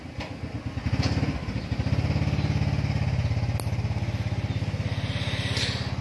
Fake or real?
real